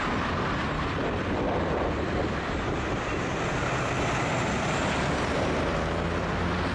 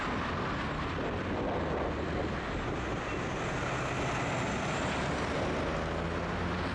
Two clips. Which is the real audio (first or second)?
second